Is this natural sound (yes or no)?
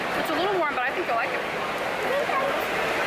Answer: yes